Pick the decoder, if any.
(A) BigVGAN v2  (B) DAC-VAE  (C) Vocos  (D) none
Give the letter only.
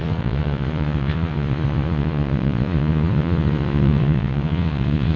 C